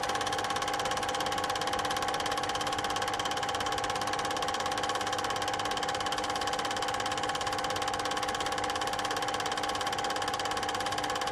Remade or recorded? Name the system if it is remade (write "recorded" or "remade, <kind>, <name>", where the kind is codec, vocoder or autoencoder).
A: recorded